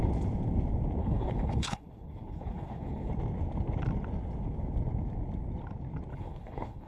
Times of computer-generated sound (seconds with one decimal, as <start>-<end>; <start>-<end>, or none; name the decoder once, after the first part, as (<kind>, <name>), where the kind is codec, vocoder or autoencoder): 1.0-3.1 (codec, HILCodec); 6.1-6.9